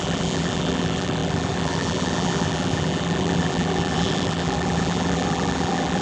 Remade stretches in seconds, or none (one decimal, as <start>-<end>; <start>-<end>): 0.0-6.0